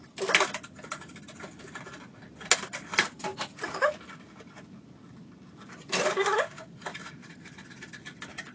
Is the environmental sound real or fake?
real